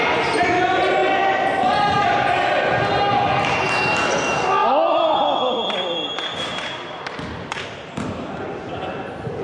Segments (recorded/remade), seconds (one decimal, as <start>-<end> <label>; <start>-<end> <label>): 0.0-9.4 recorded